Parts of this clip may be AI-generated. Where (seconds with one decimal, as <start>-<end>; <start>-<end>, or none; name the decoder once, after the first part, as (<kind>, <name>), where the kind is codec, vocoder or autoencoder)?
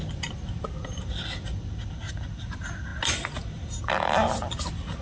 none